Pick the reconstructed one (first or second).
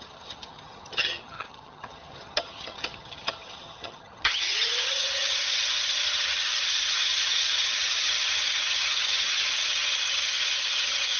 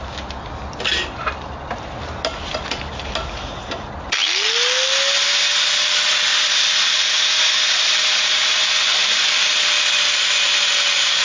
first